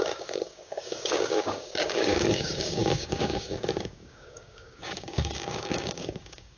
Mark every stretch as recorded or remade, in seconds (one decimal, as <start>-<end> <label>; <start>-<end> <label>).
0.0-6.6 remade